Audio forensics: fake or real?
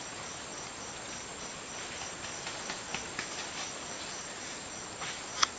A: real